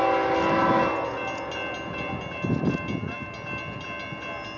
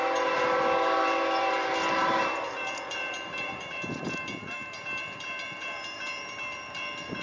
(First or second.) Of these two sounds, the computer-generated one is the second